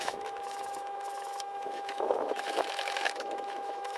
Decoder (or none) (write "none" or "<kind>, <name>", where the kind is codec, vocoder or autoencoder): autoencoder, DAC-VAE